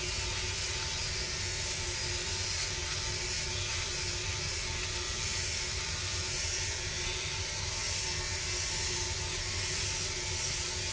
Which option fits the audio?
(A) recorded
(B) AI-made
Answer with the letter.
A